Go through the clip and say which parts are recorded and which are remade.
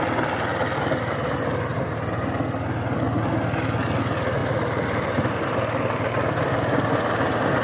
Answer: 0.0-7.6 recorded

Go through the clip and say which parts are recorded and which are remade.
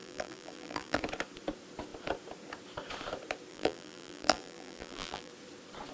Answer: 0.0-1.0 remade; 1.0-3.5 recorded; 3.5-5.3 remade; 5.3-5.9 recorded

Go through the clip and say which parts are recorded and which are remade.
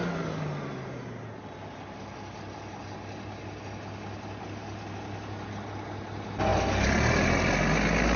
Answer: 0.0-8.2 recorded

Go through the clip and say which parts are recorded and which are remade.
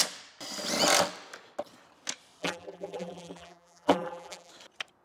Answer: 0.0-2.4 recorded; 2.4-4.5 remade; 4.5-5.0 recorded